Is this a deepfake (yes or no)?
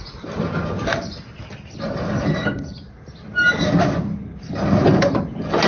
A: no